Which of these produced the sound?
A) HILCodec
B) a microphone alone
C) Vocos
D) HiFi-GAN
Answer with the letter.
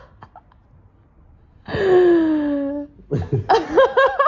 B